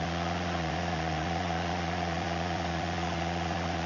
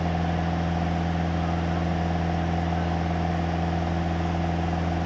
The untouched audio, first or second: second